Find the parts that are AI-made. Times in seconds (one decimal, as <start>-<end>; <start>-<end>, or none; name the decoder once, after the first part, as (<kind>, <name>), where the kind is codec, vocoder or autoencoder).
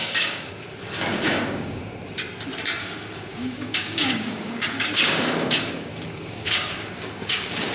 0.0-0.5 (codec, DAC); 1.1-1.8; 2.8-7.7